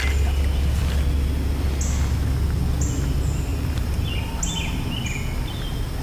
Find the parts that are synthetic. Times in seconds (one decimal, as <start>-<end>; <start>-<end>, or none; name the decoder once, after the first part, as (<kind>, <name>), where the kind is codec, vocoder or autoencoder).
3.5-4.1 (vocoder, BigVGAN v2)

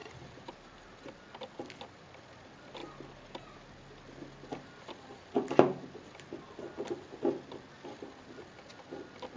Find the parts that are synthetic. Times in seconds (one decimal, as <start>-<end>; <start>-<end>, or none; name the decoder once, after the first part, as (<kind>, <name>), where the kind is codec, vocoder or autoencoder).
none

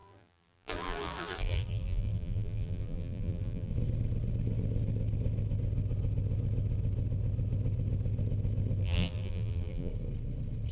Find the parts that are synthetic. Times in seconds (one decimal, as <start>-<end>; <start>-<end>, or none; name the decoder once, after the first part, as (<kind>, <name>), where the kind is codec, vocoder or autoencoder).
0.0-3.7 (vocoder, BigVGAN v2); 8.8-9.9

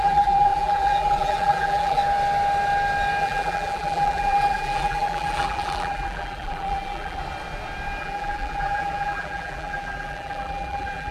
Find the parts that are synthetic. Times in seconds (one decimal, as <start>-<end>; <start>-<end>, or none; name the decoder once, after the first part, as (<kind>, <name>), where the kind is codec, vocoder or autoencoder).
0.0-2.0 (vocoder, BigVGAN v2); 3.2-7.2; 8.0-11.1